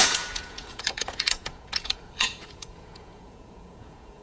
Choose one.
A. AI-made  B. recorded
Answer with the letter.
A